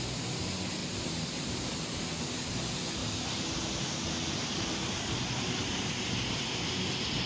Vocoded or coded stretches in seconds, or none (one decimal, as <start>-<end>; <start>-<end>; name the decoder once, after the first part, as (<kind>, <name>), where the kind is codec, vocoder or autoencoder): none